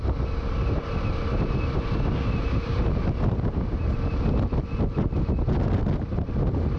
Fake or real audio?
real